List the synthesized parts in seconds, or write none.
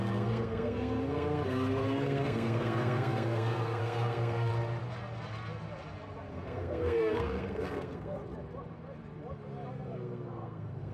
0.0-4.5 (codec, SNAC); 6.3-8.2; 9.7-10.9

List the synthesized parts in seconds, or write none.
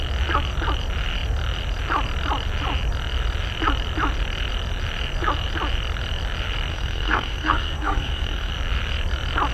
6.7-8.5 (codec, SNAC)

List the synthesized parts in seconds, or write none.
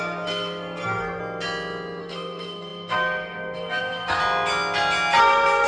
0.0-1.2 (codec, SNAC); 2.0-4.2; 5.2-5.7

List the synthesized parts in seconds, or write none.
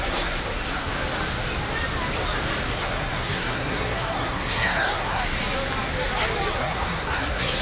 0.0-0.9 (codec, SNAC); 2.7-5.2; 6.5-7.6